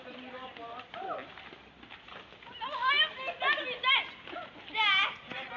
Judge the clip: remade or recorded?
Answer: recorded